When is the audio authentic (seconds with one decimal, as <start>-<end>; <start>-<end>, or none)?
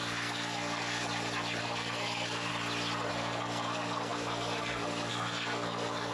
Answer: 1.0-1.6; 2.5-3.1